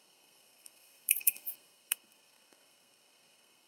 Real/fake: fake